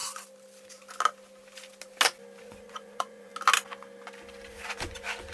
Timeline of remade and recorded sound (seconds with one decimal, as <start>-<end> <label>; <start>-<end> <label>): 0.0-2.4 recorded; 2.4-3.3 remade; 3.3-4.5 recorded; 4.5-5.3 remade